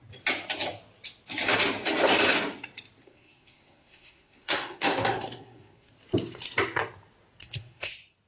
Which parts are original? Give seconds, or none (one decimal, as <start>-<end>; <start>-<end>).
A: 0.0-3.0; 5.9-7.4; 7.9-8.3